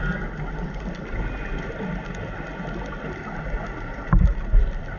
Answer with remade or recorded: recorded